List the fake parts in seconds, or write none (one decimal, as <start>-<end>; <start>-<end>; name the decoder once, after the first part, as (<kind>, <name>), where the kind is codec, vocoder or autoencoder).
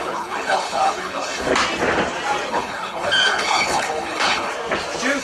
0.0-1.5 (codec, HILCodec); 2.5-4.5